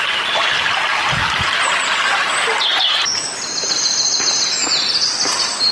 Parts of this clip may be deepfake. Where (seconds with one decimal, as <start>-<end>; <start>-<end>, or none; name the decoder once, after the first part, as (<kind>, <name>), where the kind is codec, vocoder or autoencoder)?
none